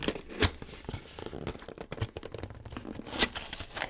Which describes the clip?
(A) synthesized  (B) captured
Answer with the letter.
B